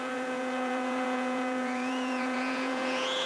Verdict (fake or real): fake